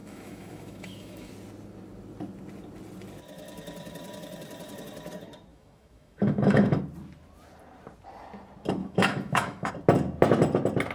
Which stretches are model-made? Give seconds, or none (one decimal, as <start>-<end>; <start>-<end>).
0.0-1.3; 5.5-6.8; 8.8-9.7